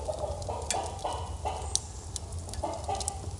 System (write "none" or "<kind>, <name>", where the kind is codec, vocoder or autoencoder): none